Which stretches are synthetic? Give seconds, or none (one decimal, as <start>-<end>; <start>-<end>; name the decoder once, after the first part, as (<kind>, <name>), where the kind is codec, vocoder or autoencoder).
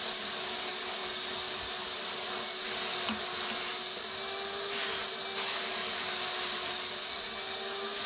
none